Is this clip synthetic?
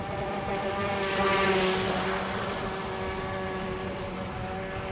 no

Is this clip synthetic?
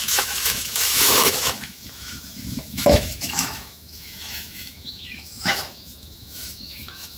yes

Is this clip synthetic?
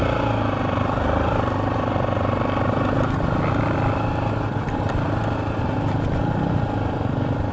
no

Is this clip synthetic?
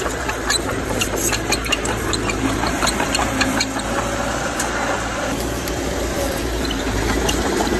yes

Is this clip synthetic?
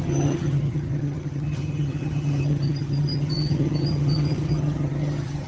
yes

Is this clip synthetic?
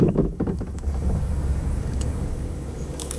yes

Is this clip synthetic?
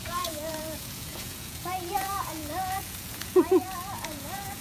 yes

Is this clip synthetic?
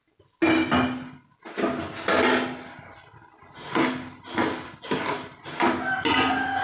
no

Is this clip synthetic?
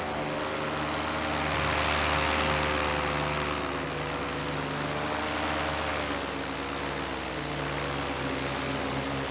no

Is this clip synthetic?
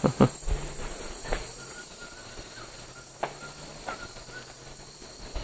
no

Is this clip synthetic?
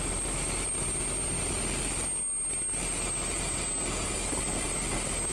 no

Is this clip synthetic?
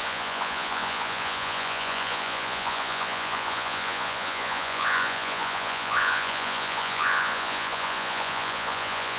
yes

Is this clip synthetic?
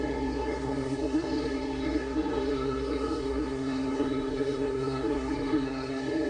yes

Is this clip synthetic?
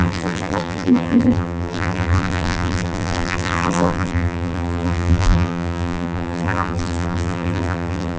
yes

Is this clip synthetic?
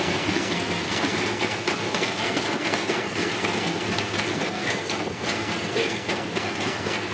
yes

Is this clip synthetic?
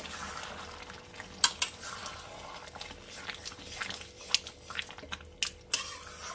no